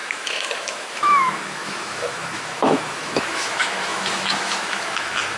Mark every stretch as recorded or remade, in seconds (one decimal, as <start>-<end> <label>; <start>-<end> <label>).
0.0-5.4 remade